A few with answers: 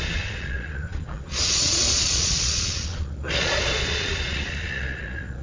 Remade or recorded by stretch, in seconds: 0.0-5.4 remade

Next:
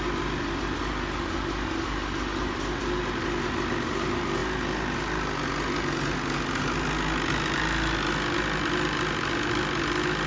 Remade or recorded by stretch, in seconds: 0.0-10.3 recorded